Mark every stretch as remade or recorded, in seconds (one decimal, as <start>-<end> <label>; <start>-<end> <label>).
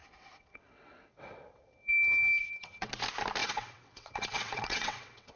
0.0-1.9 remade; 1.9-2.4 recorded; 2.4-2.9 remade; 2.9-3.4 recorded; 3.4-5.4 remade